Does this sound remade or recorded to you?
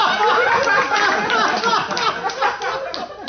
recorded